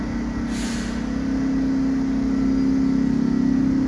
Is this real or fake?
real